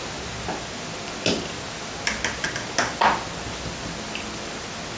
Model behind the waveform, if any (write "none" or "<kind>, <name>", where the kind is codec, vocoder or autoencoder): none